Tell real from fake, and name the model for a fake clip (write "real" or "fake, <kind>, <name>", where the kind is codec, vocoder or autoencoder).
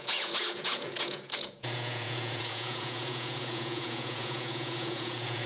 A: fake, vocoder, Vocos